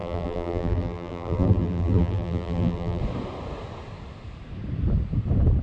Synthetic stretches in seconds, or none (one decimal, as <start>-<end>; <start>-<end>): 0.0-3.0